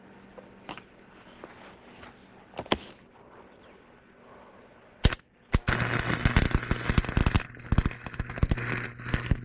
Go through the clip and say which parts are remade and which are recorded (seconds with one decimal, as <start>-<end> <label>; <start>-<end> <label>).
0.0-9.4 recorded